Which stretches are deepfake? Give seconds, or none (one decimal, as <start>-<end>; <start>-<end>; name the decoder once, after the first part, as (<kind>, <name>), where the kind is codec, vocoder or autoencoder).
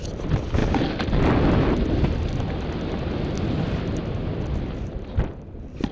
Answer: none